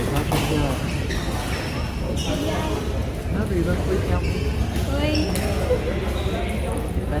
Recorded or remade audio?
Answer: recorded